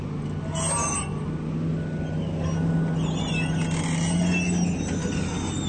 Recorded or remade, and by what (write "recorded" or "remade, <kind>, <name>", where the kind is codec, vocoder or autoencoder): recorded